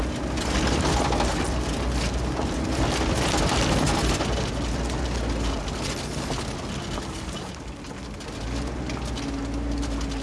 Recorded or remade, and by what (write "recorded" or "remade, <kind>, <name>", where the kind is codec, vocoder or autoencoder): recorded